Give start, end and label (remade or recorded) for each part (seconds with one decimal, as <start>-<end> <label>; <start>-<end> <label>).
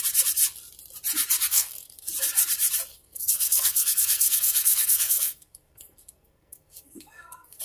0.0-1.5 recorded; 1.5-2.1 remade; 2.1-2.9 recorded; 2.9-7.6 remade